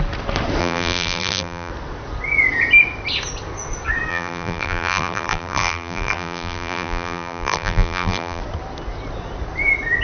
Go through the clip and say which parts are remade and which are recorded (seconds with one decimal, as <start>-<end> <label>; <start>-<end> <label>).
0.0-0.6 recorded; 0.6-1.7 remade; 1.7-4.1 recorded; 4.1-8.4 remade; 8.4-10.0 recorded